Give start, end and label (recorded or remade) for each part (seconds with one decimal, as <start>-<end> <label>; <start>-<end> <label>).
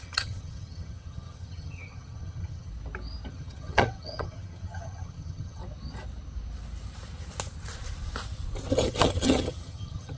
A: 0.0-2.7 remade; 2.7-3.3 recorded; 3.3-5.6 remade; 5.6-8.7 recorded; 8.7-10.2 remade